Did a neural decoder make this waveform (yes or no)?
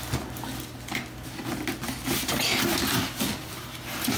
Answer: no